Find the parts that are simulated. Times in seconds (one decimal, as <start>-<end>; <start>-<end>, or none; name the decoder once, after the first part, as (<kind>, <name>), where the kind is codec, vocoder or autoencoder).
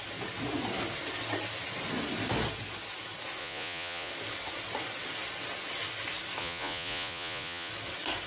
3.4-4.1 (vocoder, Vocos); 6.4-7.7